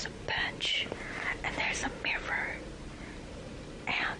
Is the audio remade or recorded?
recorded